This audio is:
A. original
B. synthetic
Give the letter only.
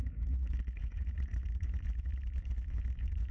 B